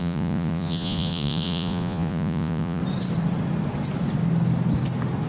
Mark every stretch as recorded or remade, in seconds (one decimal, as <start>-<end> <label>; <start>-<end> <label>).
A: 0.0-2.8 remade; 2.8-5.3 recorded